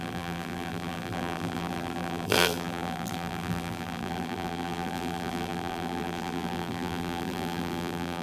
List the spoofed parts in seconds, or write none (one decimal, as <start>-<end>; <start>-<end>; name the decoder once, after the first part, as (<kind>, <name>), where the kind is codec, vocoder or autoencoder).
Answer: 0.0-8.2 (vocoder, BigVGAN v2)